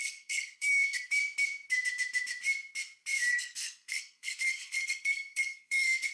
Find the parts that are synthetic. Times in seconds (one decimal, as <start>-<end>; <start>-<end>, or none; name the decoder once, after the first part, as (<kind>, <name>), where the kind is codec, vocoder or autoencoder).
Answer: 0.0-1.1 (codec, SNAC); 3.3-6.1